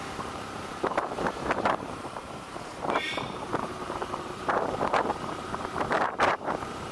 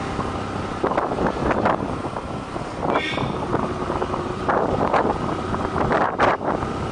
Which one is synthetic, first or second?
first